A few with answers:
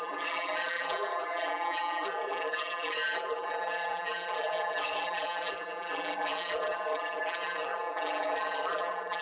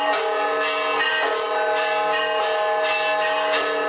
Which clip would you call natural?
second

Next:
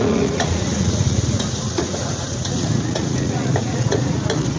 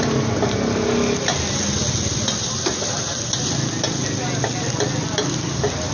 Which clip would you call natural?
second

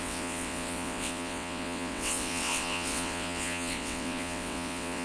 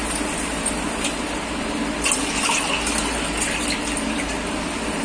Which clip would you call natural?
second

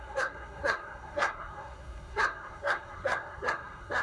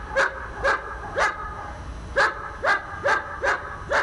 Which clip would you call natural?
second